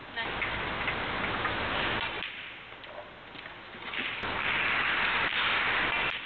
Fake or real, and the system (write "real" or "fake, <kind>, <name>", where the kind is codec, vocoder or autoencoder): real